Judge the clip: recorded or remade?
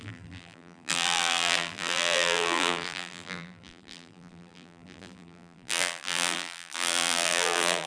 remade